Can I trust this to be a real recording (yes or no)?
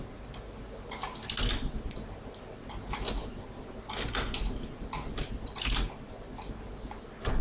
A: yes